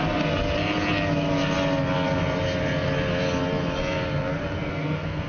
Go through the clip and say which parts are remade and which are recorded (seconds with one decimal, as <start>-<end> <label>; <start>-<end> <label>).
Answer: 0.0-4.7 recorded; 4.7-5.3 remade

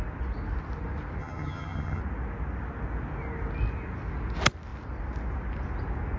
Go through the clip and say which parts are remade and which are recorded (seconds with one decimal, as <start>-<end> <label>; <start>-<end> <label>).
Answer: 0.0-1.2 recorded; 1.2-2.0 remade; 2.0-6.2 recorded

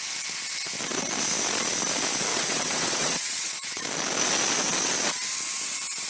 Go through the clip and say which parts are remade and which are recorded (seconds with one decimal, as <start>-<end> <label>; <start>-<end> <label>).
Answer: 0.0-2.3 recorded; 2.3-3.8 remade; 3.8-6.1 recorded

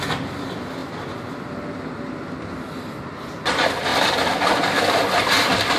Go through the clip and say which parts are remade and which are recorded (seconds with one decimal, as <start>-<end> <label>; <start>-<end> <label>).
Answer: 0.0-5.8 recorded

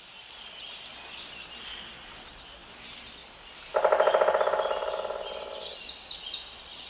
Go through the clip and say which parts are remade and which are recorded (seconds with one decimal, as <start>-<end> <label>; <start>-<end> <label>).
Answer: 0.0-6.9 recorded

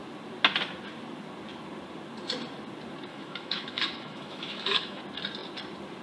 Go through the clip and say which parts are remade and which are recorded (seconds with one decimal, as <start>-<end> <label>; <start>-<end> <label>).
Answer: 0.0-3.1 recorded; 3.1-5.0 remade; 5.0-6.0 recorded

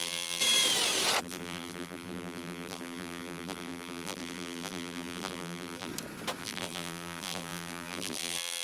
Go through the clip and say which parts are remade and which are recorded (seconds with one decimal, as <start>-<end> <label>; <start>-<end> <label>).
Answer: 0.0-0.4 remade; 0.4-1.2 recorded; 1.2-5.9 remade; 5.9-6.4 recorded; 6.4-8.6 remade